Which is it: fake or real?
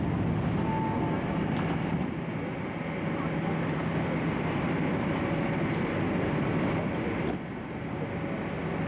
real